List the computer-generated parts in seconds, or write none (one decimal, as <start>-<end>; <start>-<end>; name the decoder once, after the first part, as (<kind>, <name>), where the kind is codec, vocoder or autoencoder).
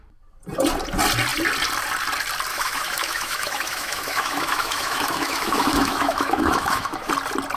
2.5-7.1 (autoencoder, DAC-VAE)